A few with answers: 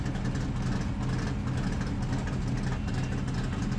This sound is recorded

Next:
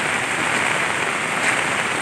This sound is recorded